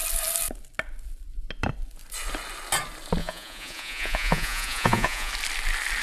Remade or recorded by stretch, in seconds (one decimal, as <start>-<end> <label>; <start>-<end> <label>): 0.0-3.2 recorded; 3.2-5.3 remade; 5.3-6.0 recorded

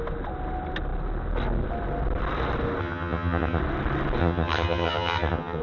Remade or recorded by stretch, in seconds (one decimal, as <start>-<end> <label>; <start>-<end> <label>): 0.0-2.8 recorded; 2.8-3.6 remade; 3.6-4.2 recorded; 4.2-5.6 remade

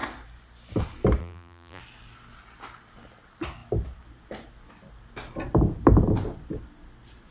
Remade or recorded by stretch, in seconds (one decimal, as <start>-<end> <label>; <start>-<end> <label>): 0.0-1.2 recorded; 1.2-1.8 remade; 1.8-7.3 recorded

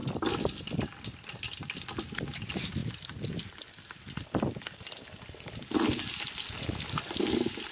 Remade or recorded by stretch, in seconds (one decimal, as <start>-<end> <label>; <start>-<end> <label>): 0.0-7.7 recorded

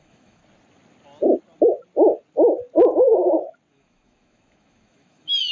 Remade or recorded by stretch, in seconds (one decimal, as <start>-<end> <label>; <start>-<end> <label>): 0.0-0.4 remade; 0.4-3.7 recorded; 3.7-5.5 remade

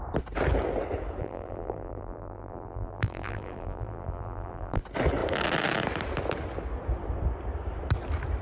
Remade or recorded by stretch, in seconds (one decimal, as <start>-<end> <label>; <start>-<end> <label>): 0.0-1.2 recorded; 1.2-4.8 remade; 4.8-8.4 recorded